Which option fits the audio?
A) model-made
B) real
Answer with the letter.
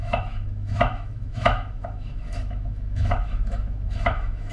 A